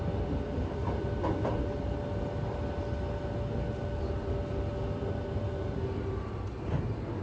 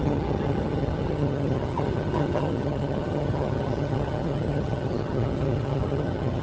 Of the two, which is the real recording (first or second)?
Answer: first